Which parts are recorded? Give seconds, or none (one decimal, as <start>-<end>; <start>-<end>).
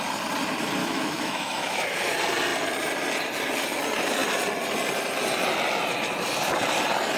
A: 0.0-0.8; 1.9-7.2